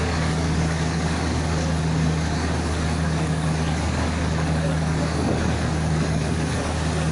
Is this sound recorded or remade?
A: remade